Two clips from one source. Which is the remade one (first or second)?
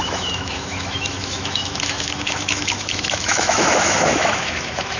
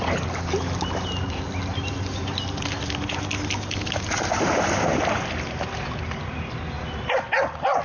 first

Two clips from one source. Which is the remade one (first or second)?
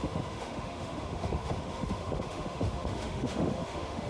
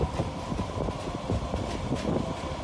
first